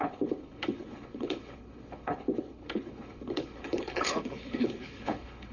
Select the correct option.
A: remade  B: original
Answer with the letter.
A